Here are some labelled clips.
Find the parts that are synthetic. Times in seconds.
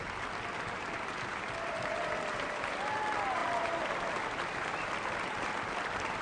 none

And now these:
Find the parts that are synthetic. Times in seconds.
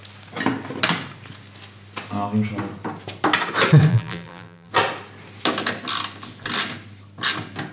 3.9-4.7 (vocoder, BigVGAN v2)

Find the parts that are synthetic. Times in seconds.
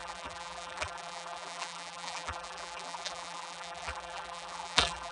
0.0-5.1 (vocoder, BigVGAN v2)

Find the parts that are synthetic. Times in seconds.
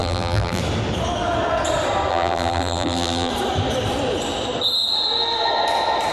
0.0-0.6 (vocoder, BigVGAN v2); 2.1-3.3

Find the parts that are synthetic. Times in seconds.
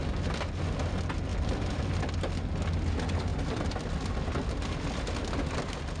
1.3-1.8 (vocoder, BigVGAN v2); 3.3-4.5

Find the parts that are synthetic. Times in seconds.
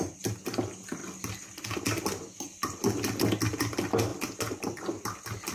none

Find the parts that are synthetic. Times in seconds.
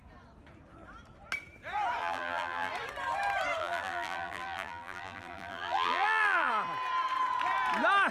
2.0-2.7 (vocoder, BigVGAN v2); 3.6-6.5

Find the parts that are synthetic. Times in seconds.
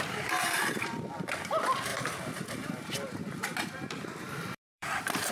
0.0-5.3 (vocoder, BigVGAN v2)